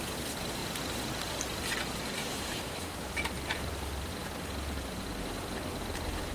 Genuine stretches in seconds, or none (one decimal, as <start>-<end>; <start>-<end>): 0.0-2.2; 3.1-6.3